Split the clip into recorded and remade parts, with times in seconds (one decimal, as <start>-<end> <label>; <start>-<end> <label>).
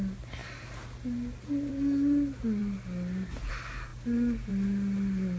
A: 0.0-5.4 recorded